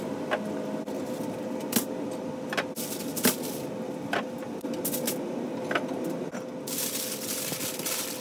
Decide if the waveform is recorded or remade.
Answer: recorded